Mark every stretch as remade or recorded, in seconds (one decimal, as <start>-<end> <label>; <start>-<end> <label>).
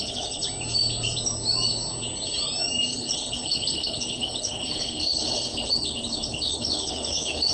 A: 0.0-0.4 remade; 0.4-2.9 recorded; 2.9-7.5 remade